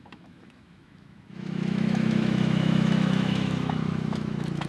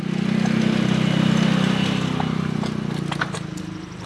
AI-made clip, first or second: first